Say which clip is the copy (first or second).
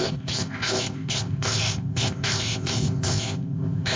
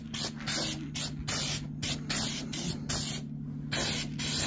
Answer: first